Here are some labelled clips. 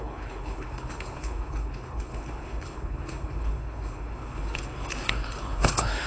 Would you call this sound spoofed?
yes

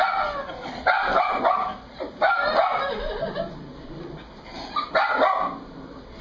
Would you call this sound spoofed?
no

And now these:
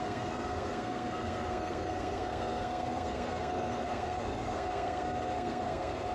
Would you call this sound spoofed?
yes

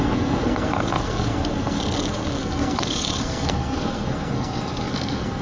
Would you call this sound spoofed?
yes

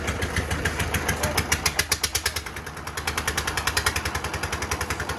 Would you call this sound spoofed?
no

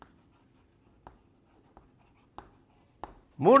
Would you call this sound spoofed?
no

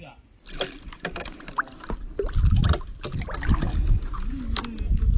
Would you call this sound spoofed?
no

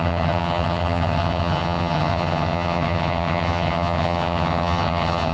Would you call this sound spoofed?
yes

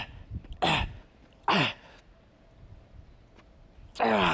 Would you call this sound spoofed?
no